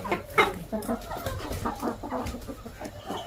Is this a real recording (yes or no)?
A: yes